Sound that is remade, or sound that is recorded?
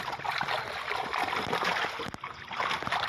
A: recorded